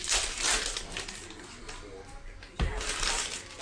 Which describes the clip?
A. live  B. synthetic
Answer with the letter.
A